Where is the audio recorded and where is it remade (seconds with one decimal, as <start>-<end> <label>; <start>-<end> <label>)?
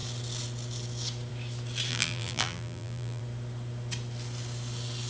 0.0-1.9 recorded; 1.9-3.2 remade; 3.2-5.1 recorded